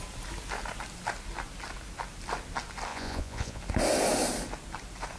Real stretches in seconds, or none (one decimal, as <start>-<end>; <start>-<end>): 0.0-2.9; 3.6-5.2